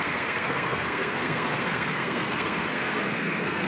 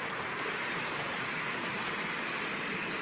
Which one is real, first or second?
second